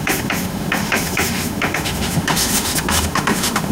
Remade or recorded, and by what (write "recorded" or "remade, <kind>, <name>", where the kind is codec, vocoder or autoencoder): remade, autoencoder, DAC-VAE